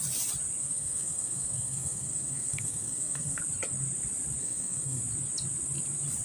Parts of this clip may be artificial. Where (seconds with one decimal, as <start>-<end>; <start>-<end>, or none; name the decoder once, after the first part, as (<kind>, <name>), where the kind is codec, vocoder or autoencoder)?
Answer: 0.6-3.4 (codec, SNAC); 4.4-5.0